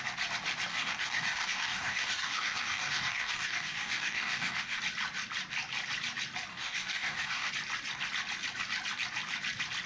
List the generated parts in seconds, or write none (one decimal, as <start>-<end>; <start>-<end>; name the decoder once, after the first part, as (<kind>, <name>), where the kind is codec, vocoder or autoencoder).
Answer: 0.7-4.8 (codec, DAC); 6.5-7.5